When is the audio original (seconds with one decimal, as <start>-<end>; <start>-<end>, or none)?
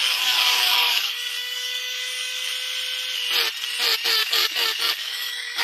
2.5-4.2